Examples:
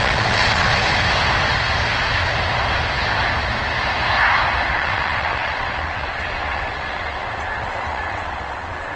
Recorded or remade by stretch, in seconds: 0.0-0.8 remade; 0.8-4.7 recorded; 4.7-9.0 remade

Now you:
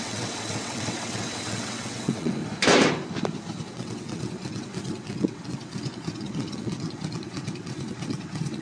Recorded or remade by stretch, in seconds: 0.0-2.4 remade; 2.4-3.7 recorded; 3.7-8.6 remade